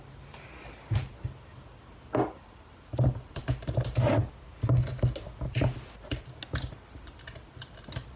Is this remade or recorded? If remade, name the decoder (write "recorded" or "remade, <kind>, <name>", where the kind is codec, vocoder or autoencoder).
recorded